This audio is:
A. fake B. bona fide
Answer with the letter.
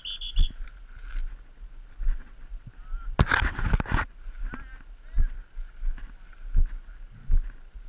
B